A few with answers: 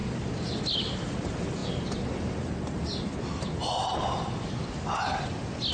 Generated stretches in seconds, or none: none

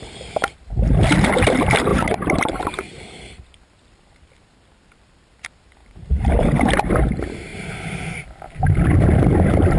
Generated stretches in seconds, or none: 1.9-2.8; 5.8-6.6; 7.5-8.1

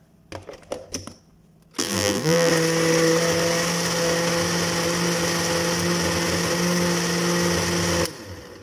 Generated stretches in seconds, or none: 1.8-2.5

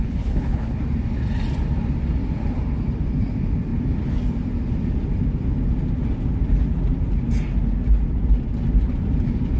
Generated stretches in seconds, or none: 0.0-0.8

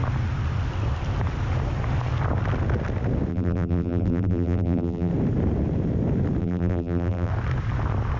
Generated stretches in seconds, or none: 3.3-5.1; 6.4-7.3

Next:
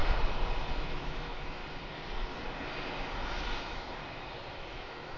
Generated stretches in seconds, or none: 0.8-1.6; 3.6-4.0; 4.7-5.2

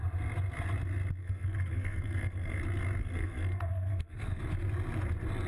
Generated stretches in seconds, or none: 1.2-2.6; 3.0-4.4

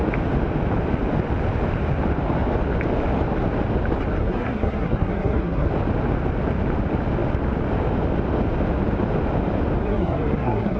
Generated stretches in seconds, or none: 4.2-5.7; 9.8-10.8